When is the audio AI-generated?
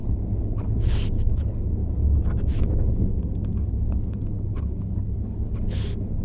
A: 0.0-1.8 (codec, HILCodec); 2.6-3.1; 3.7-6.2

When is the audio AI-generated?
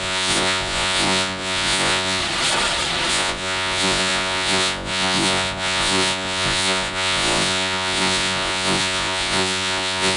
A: 0.0-2.2 (vocoder, Vocos); 3.1-10.2